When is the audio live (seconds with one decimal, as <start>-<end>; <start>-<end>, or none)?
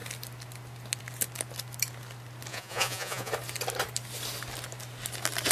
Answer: 0.0-2.5; 3.3-5.5